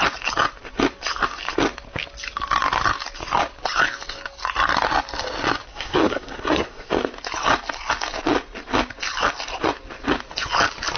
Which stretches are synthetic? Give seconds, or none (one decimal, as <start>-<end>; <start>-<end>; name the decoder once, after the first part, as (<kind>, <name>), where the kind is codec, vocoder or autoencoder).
5.7-6.9 (codec, SNAC)